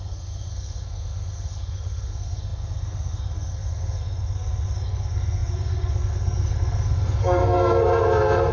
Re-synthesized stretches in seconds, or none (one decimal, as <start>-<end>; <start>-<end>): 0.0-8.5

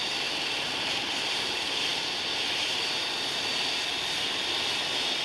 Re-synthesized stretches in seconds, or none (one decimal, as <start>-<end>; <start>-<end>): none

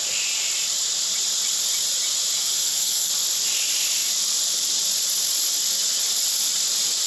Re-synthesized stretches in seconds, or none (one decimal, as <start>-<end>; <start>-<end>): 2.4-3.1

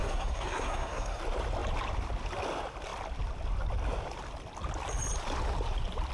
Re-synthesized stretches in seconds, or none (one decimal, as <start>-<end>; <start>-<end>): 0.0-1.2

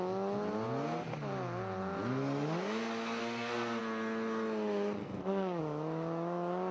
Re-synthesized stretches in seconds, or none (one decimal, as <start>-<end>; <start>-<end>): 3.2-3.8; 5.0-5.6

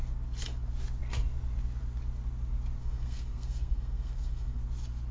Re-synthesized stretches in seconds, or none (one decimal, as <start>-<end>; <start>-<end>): 2.8-4.6

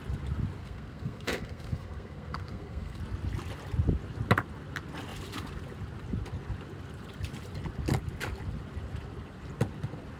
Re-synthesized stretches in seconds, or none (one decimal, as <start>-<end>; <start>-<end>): 0.6-3.0

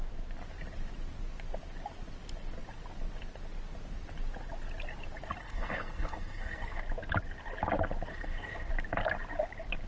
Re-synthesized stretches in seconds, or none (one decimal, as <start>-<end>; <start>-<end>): 5.4-6.8; 8.1-8.7